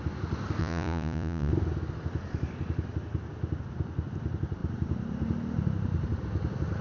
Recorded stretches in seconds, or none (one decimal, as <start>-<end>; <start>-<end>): 0.0-0.6; 1.5-6.8

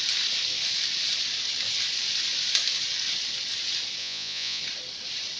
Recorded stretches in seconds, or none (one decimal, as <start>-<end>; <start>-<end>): 0.0-4.0; 4.6-5.4

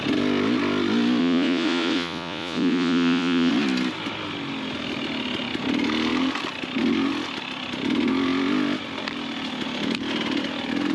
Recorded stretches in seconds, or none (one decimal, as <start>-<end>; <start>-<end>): 0.0-1.2; 3.5-10.9

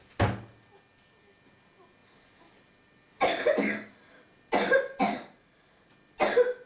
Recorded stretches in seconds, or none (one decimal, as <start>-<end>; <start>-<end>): 0.0-5.1; 5.9-6.7

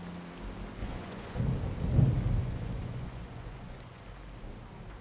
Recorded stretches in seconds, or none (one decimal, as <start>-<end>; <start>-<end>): 0.0-0.8; 1.4-2.4; 4.0-5.0

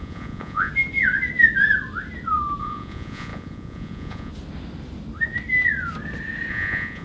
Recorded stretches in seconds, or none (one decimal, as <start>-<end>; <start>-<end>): 0.7-2.6; 4.3-6.5

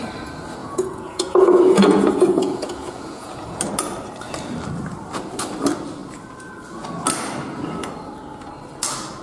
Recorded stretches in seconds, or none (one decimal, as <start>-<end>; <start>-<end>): 0.0-0.6; 3.6-9.2

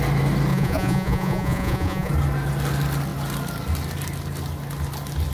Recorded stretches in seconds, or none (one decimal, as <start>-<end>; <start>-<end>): 0.0-0.5; 2.1-5.3